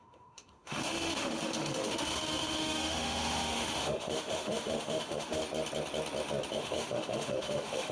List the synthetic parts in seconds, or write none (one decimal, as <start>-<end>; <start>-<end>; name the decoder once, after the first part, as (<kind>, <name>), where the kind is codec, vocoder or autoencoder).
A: 0.0-5.4 (autoencoder, DAC-VAE); 6.5-7.9